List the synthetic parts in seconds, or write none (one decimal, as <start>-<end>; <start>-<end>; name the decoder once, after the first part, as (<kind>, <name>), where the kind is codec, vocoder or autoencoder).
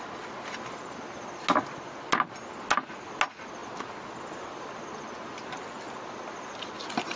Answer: none